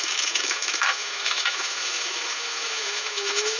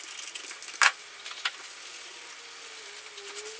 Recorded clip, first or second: second